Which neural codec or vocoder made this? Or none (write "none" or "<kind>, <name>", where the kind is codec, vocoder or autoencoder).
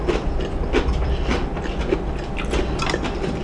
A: none